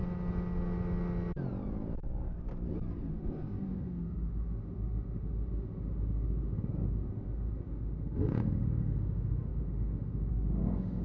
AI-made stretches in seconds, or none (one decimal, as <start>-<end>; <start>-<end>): 3.1-11.0